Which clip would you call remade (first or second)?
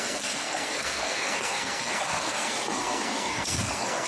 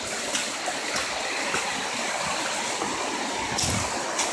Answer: first